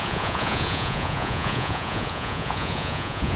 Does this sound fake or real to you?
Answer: fake